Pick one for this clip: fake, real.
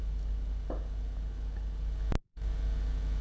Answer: real